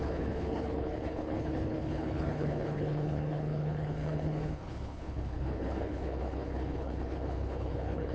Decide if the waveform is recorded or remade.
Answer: remade